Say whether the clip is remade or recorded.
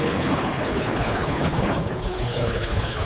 remade